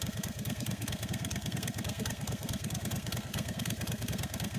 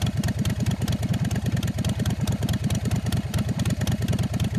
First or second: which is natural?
second